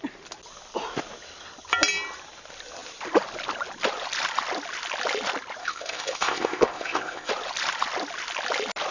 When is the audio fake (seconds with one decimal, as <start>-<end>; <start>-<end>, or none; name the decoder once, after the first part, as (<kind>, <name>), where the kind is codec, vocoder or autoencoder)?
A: 5.6-7.3 (codec, ZipCodec)